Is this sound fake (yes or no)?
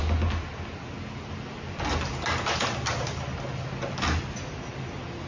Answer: no